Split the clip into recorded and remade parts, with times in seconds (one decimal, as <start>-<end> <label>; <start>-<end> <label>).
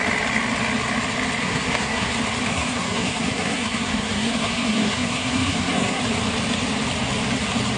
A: 0.0-1.4 recorded; 1.4-2.1 remade; 2.1-2.5 recorded; 2.5-6.0 remade; 6.0-7.8 recorded